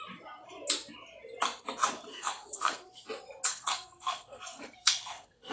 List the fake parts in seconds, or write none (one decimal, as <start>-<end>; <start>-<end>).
2.1-3.1; 3.5-5.5